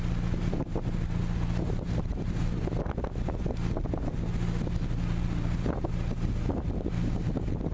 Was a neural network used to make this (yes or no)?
no